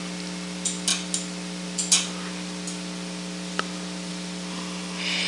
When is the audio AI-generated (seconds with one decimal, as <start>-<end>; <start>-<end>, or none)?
none